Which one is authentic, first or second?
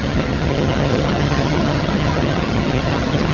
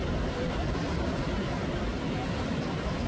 second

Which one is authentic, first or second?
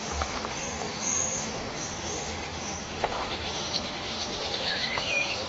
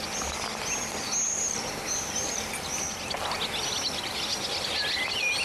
second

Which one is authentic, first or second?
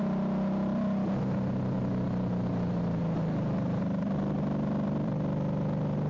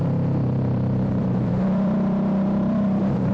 first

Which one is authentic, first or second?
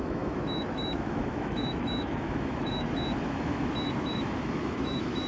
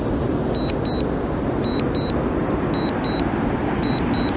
second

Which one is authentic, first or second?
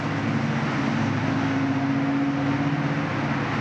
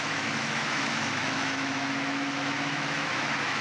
first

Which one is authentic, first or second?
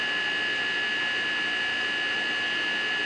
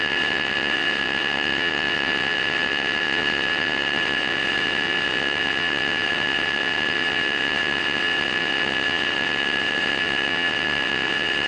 first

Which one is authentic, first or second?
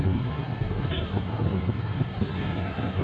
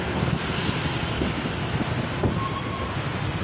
second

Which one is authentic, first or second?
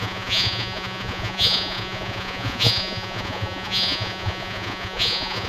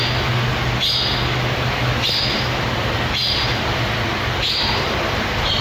second